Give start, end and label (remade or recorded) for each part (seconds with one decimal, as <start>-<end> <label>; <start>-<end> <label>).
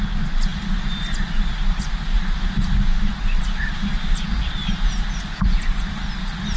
0.0-6.6 recorded